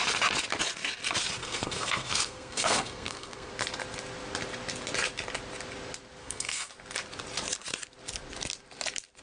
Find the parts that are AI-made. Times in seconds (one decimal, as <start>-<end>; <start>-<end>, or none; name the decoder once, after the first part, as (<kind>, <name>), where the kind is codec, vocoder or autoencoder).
1.4-3.5 (codec, SNAC); 6.2-6.7